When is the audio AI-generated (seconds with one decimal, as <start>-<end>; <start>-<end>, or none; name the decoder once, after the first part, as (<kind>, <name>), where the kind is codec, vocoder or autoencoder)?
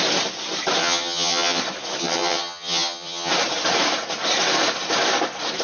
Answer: 0.8-1.6 (vocoder, HiFi-GAN); 2.0-3.3